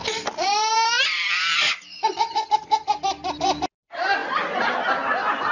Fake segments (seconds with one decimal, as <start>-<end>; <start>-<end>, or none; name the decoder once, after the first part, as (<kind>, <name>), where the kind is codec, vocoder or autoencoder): none